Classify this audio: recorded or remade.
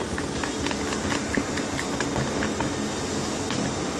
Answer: recorded